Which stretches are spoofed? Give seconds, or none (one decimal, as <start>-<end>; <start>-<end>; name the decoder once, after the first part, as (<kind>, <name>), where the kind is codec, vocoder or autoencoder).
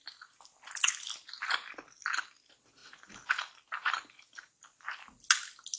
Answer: none